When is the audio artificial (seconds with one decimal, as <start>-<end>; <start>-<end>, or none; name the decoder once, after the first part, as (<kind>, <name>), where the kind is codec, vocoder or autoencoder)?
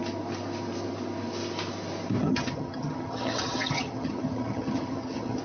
2.2-5.4 (vocoder, HiFi-GAN)